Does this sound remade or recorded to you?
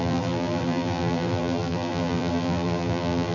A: remade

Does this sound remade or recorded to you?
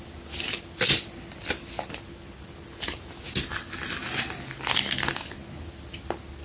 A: recorded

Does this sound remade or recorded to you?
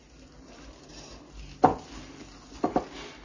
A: recorded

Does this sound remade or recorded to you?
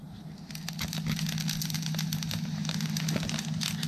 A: recorded